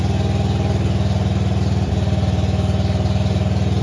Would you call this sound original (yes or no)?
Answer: yes